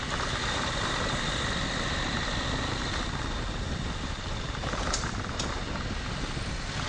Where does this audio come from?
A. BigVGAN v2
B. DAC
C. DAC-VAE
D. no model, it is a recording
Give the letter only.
D